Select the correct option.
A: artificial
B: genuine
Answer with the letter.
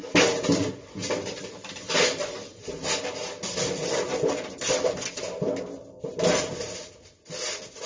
B